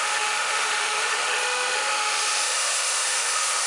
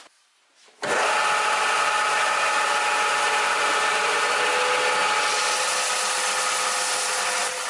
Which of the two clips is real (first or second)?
second